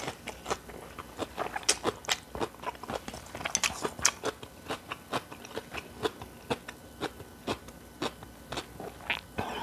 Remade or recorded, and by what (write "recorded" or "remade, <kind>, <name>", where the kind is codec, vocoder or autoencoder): recorded